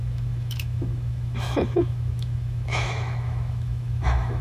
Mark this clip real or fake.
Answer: fake